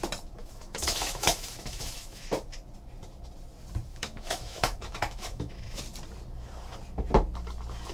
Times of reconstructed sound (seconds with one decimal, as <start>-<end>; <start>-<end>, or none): 0.4-2.3; 3.9-5.8